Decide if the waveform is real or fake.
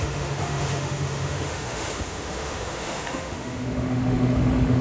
fake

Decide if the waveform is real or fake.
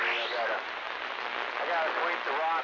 real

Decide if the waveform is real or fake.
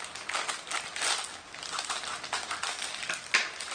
real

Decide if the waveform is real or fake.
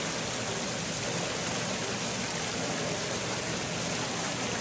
real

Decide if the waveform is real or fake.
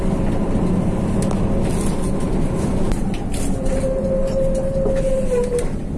real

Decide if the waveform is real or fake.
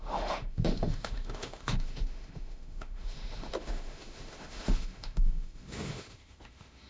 fake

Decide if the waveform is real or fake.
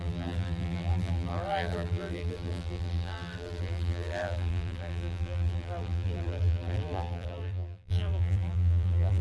fake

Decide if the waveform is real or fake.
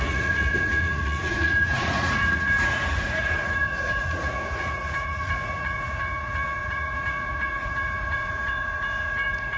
fake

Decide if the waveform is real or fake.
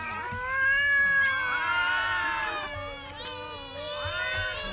real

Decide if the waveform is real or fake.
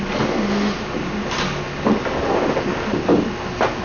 real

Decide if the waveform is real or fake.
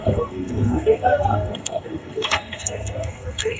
fake